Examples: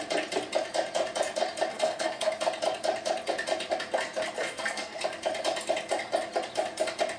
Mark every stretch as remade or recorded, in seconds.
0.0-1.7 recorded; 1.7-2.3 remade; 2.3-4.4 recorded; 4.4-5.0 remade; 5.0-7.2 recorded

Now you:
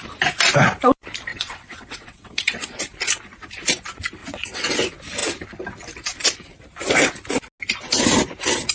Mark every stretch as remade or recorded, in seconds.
0.0-1.3 recorded; 1.3-2.8 remade; 2.8-4.2 recorded; 4.2-4.7 remade; 4.7-8.7 recorded

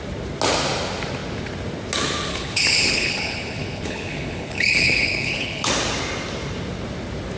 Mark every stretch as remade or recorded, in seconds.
0.0-2.3 recorded; 2.3-5.7 remade; 5.7-7.4 recorded

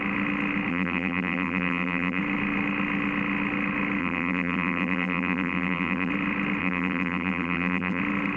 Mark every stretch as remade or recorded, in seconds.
0.0-0.7 recorded; 0.7-2.2 remade; 2.2-4.0 recorded; 4.0-6.1 remade; 6.1-6.6 recorded; 6.6-8.0 remade; 8.0-8.4 recorded

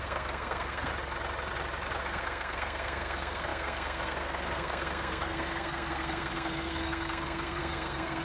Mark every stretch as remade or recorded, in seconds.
0.0-0.9 remade; 0.9-2.0 recorded; 2.0-8.2 remade

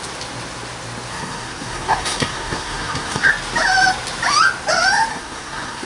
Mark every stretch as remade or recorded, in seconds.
0.0-1.1 recorded; 1.1-3.3 remade; 3.3-5.1 recorded; 5.1-5.9 remade

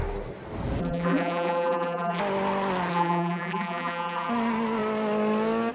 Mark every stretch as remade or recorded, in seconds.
0.0-0.8 recorded; 0.8-2.2 remade; 2.2-2.9 recorded; 2.9-4.3 remade; 4.3-5.7 recorded

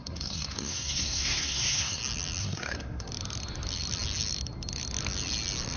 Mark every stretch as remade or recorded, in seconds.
0.0-2.0 remade; 2.0-2.4 recorded; 2.4-3.1 remade; 3.1-5.8 recorded